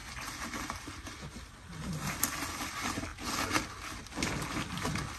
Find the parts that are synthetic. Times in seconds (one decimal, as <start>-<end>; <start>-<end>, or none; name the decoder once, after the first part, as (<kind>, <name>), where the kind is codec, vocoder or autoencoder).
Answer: none